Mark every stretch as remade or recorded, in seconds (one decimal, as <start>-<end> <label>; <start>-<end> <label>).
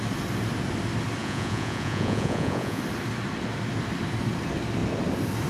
0.0-1.2 recorded; 1.2-2.8 remade; 2.8-5.5 recorded